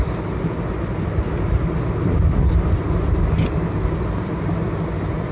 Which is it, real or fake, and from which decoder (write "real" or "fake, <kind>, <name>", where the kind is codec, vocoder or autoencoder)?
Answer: real